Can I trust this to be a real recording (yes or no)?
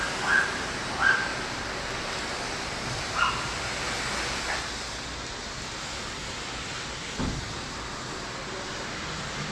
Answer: yes